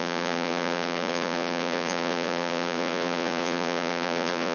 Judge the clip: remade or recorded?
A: remade